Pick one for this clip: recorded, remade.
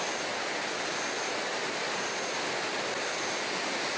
recorded